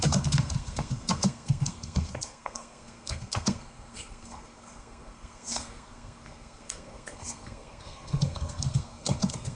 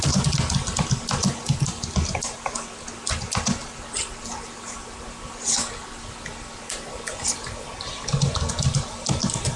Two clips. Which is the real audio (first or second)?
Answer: second